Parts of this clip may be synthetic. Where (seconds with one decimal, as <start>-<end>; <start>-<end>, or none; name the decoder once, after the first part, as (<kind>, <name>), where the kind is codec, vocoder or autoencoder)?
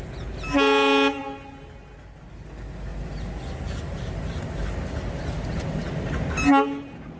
none